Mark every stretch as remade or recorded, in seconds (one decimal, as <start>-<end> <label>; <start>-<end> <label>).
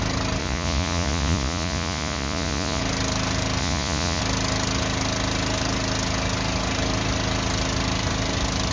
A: 0.0-0.4 recorded; 0.4-2.8 remade; 2.8-3.6 recorded; 3.6-4.2 remade; 4.2-8.7 recorded